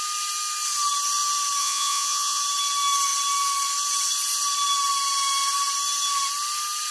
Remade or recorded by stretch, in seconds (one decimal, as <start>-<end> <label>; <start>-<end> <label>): 0.0-1.6 recorded; 1.6-2.4 remade; 2.4-6.9 recorded